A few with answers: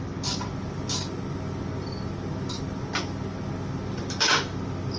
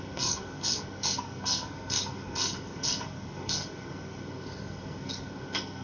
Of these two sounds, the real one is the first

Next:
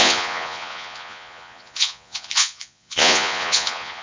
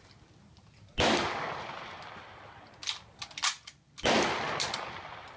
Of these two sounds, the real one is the second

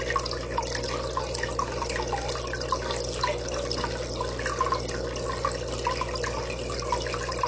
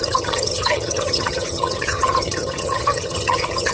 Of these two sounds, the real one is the first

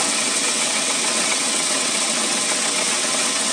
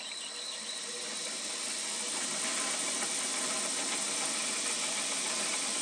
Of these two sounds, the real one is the second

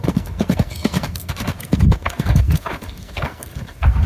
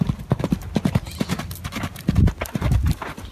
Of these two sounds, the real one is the second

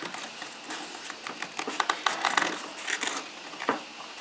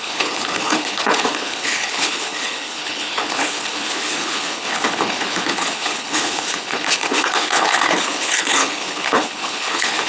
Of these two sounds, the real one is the first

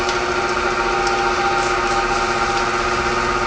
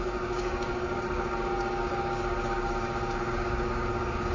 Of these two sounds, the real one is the first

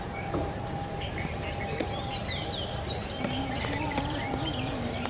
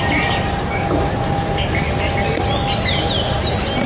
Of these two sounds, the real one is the second